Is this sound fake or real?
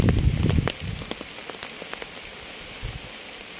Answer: real